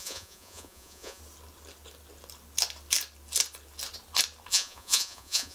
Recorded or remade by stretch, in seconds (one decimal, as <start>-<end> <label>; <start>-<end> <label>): 0.0-1.2 remade; 1.2-4.5 recorded; 4.5-5.5 remade